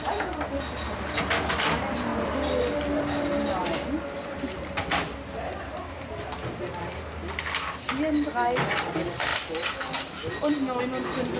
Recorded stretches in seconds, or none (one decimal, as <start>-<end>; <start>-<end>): 0.0-11.4